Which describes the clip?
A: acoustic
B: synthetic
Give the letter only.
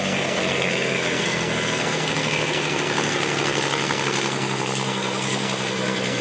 B